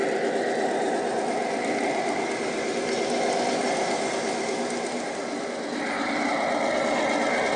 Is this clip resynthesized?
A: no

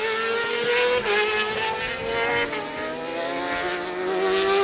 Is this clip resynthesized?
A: no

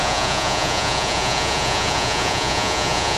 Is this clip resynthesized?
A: yes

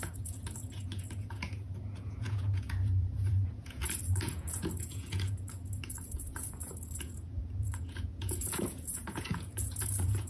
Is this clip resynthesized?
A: yes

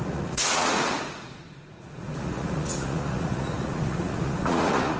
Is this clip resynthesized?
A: yes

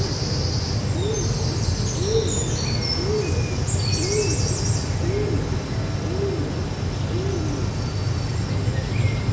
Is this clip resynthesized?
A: no